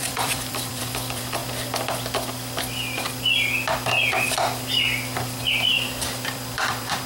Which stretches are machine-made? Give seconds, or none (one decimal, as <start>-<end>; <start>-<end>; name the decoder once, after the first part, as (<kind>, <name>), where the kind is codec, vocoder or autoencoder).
0.0-1.4 (vocoder, BigVGAN v2); 5.7-7.1